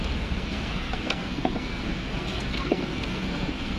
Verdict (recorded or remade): remade